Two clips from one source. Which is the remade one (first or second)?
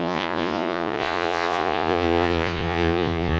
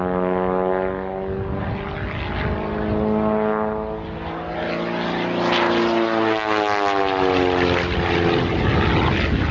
first